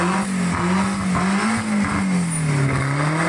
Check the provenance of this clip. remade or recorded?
recorded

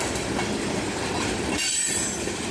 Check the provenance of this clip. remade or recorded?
recorded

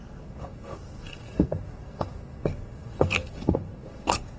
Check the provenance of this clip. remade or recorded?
remade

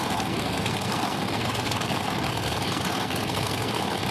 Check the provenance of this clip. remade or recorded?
remade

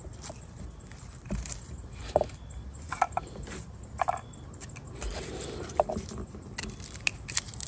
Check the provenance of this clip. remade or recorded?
recorded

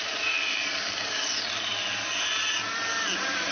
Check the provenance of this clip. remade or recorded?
recorded